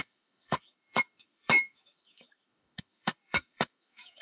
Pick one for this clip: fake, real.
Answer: fake